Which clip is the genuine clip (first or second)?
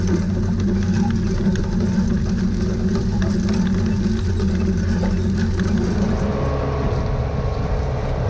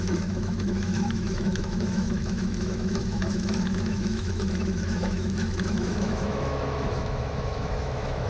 first